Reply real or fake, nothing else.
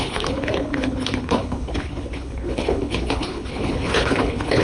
fake